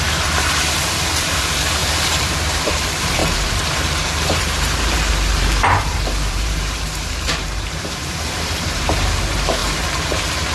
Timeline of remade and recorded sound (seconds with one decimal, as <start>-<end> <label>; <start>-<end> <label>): 0.0-10.5 remade